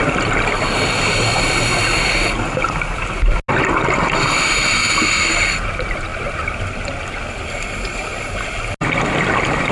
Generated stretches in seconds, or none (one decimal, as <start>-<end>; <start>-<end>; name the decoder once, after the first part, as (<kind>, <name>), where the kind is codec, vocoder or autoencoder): none